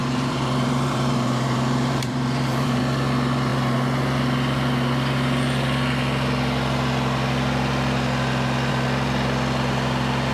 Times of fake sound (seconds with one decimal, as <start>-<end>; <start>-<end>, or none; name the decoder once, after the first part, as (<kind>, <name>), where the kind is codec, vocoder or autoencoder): 0.0-2.8 (vocoder, BigVGAN v2)